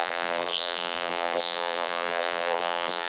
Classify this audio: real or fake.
fake